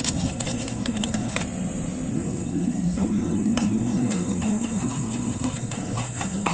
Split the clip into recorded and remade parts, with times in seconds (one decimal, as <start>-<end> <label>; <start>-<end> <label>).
0.0-1.4 remade; 1.4-2.1 recorded; 2.1-6.5 remade